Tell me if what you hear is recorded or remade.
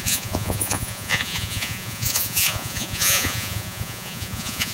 remade